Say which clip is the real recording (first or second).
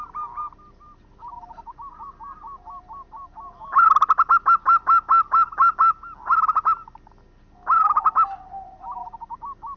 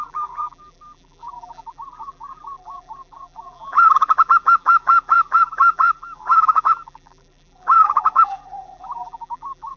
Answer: first